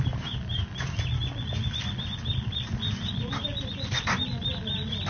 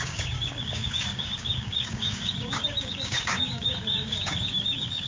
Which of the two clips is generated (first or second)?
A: second